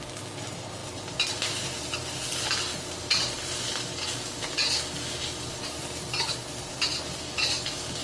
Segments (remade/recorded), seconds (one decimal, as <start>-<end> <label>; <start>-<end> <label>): 0.0-8.0 recorded